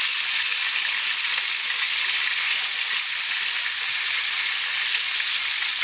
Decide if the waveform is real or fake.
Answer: real